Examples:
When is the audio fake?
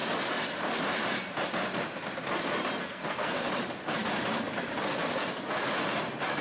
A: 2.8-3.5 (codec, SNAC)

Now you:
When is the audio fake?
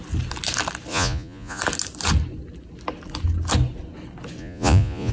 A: 0.9-1.6 (vocoder, Vocos); 4.4-5.1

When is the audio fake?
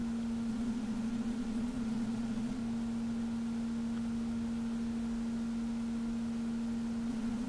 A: 0.5-2.6 (vocoder, Vocos); 7.1-7.5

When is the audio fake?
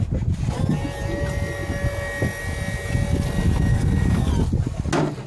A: 3.7-4.3 (codec, DAC)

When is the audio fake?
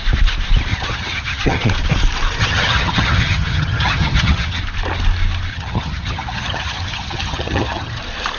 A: 0.7-1.6 (vocoder, HiFi-GAN); 2.4-4.6; 5.5-8.0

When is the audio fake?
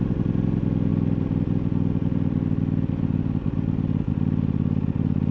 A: 0.9-4.1 (vocoder, BigVGAN v2)